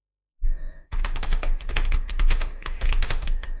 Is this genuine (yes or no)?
no